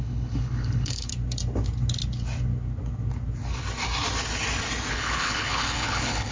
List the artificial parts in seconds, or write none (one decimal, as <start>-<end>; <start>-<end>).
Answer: 0.0-1.1; 4.9-6.3